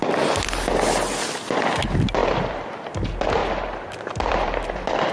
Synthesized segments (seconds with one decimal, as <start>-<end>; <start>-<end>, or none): 2.2-2.9; 3.4-5.1

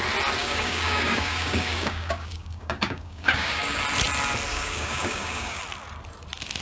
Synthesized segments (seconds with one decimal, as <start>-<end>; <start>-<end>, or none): 0.4-3.8; 4.5-5.6

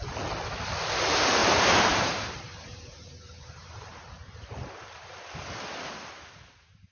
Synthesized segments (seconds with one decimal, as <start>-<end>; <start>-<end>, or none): 1.4-5.2

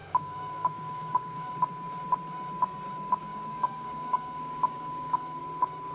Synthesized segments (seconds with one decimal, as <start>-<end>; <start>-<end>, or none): 0.0-1.5; 3.2-5.4

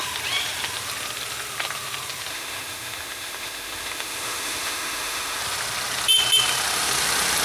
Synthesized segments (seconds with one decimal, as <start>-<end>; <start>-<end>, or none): 2.3-5.4

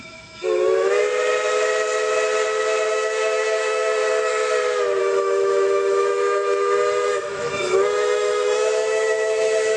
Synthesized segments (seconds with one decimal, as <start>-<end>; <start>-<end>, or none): 0.0-1.0; 2.9-4.0; 5.0-9.8

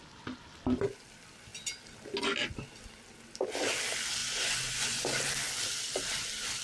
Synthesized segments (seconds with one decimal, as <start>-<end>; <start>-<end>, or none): 4.2-5.2